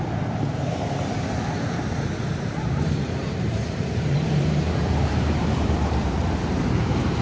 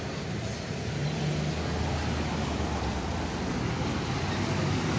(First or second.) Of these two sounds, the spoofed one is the first